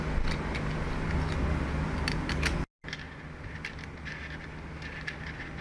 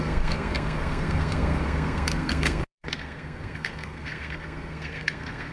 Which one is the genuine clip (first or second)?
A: first